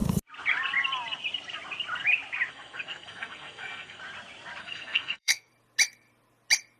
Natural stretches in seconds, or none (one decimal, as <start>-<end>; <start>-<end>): 0.0-2.5; 4.0-4.6; 5.5-6.8